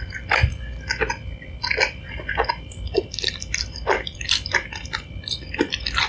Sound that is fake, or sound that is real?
real